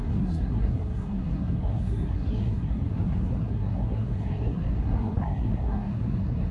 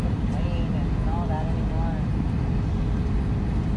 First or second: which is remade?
first